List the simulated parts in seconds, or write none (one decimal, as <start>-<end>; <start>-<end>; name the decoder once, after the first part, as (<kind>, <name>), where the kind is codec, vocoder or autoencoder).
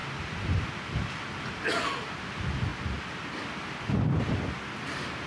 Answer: 0.7-2.7 (vocoder, BigVGAN v2); 3.4-5.3